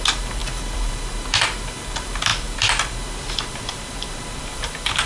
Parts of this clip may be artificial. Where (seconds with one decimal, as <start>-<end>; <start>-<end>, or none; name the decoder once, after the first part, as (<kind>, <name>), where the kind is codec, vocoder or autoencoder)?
0.4-0.9 (vocoder, BigVGAN v2); 2.3-5.1